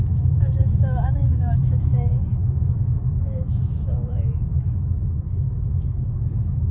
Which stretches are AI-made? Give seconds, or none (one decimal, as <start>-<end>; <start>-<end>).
0.0-6.7